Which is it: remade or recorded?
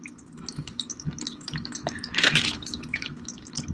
remade